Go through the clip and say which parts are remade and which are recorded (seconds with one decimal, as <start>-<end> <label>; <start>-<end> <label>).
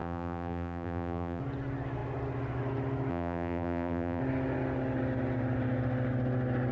0.0-1.4 remade; 1.4-3.1 recorded; 3.1-4.2 remade; 4.2-6.7 recorded